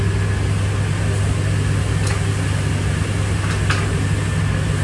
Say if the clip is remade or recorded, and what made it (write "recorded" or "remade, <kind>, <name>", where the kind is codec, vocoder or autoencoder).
recorded